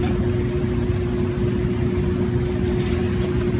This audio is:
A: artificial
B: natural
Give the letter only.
B